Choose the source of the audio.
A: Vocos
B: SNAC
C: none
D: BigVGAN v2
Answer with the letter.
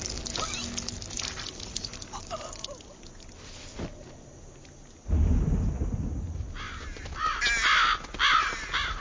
C